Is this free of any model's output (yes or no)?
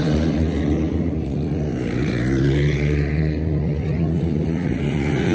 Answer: no